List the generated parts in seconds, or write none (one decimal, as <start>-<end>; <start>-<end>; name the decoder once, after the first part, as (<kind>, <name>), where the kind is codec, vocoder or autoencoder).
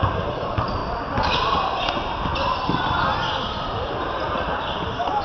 0.0-0.8 (vocoder, BigVGAN v2); 1.3-2.3; 3.5-5.2